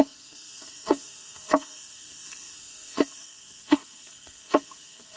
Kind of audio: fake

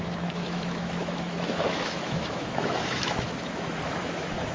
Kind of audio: fake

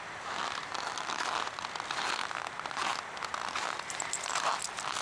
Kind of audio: real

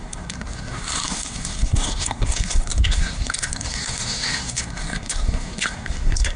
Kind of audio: fake